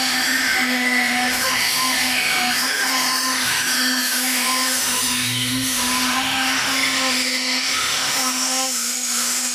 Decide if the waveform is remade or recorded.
remade